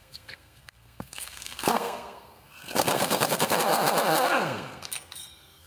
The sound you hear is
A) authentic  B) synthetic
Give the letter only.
B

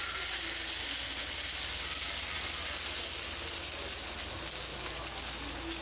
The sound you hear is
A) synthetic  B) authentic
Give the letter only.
B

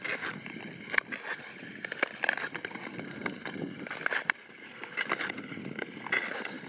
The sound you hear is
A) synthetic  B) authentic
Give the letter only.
B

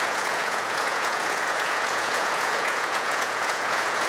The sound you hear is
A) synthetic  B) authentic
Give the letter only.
A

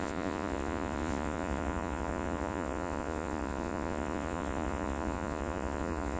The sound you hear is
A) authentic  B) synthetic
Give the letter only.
B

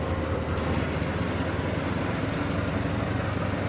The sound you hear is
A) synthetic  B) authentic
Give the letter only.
B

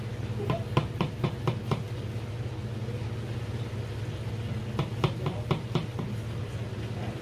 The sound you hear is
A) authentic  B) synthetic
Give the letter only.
A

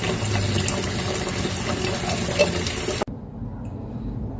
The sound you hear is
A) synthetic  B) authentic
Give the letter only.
B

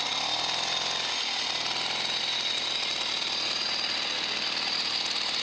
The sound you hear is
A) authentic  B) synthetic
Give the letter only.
A